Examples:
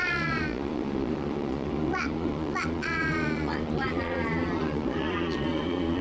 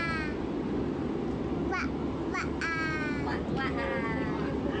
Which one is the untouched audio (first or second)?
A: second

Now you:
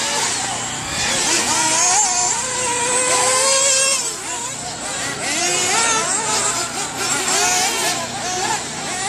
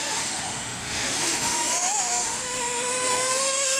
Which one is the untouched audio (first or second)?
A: first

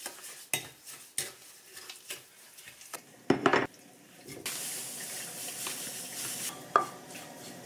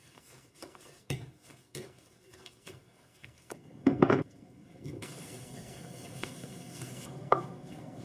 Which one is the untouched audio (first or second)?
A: first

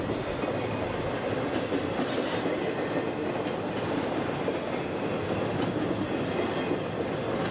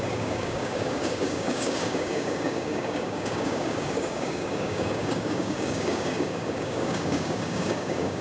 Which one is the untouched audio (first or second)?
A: first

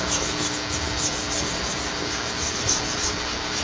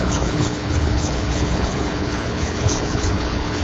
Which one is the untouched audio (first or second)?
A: first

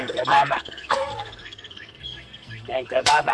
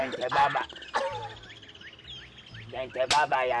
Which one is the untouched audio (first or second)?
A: second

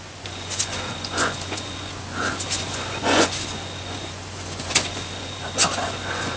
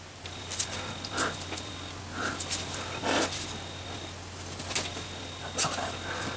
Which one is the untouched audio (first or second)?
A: second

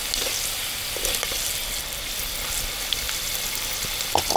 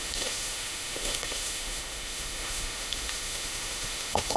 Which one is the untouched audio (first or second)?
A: first